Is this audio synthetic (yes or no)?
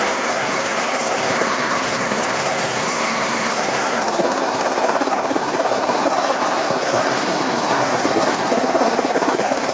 yes